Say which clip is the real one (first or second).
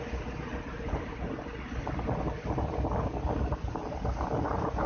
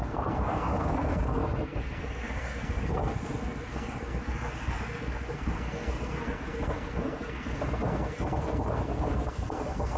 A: first